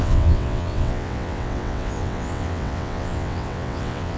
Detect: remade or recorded remade